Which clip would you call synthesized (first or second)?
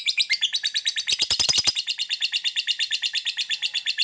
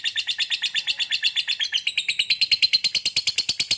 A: first